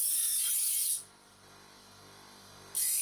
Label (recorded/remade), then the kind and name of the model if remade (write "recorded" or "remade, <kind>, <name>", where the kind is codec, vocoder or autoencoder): recorded